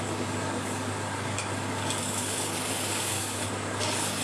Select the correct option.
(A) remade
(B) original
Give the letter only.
A